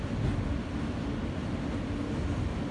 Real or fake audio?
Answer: real